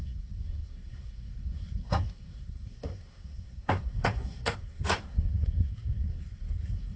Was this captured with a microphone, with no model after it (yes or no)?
no